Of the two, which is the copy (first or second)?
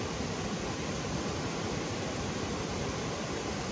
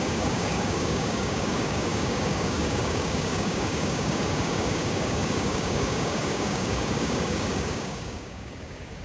second